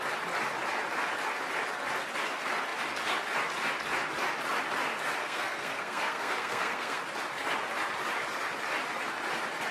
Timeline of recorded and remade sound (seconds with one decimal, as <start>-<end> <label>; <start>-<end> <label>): 0.0-5.2 recorded; 5.2-7.0 remade; 7.0-9.7 recorded